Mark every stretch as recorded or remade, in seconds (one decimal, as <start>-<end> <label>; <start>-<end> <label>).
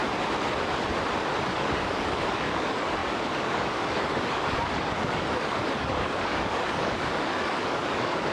0.0-1.5 recorded; 1.5-8.3 remade